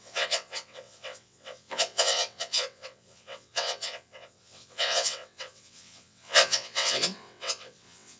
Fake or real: fake